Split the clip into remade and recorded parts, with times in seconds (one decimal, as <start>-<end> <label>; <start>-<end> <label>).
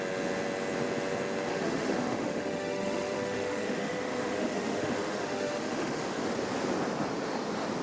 0.0-1.5 recorded; 1.5-6.2 remade; 6.2-7.8 recorded